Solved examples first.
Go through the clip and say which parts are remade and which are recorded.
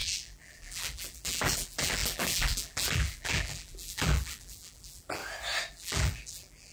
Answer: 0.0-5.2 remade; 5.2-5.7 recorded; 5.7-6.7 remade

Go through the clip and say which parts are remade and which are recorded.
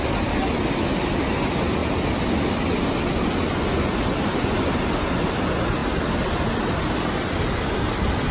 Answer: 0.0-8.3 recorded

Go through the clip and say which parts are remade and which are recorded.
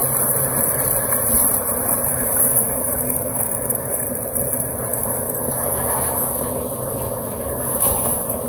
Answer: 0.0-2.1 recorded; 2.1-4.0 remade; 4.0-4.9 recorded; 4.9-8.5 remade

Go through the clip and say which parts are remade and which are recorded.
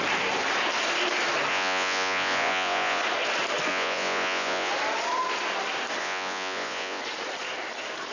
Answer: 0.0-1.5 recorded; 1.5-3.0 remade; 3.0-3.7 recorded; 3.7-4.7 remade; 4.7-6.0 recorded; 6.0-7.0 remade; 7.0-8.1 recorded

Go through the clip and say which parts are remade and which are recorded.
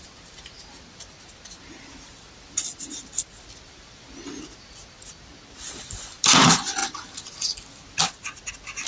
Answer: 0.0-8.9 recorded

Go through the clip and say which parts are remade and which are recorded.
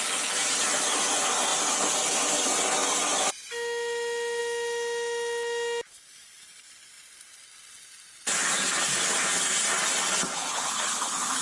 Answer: 0.0-10.4 recorded; 10.4-11.4 remade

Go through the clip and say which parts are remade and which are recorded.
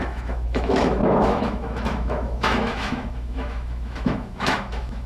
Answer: 0.0-5.1 remade